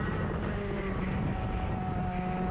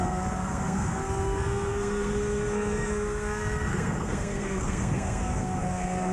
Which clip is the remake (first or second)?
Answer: second